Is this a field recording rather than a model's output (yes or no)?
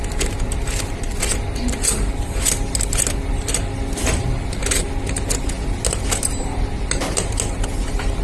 yes